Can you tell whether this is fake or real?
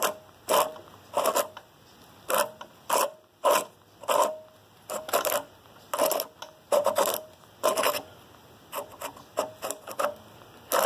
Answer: real